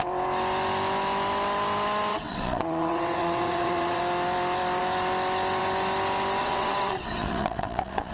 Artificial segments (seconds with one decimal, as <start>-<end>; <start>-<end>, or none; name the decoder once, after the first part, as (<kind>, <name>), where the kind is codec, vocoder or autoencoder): 2.1-4.0 (vocoder, WaveNeXt); 6.4-8.1